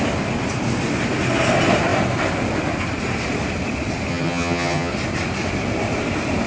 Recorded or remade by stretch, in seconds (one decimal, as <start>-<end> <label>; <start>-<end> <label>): 0.0-4.1 recorded; 4.1-4.9 remade; 4.9-6.5 recorded